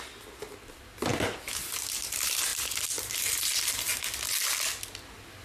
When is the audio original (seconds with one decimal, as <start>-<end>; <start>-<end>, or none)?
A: 0.0-1.1; 1.7-2.5; 4.0-5.4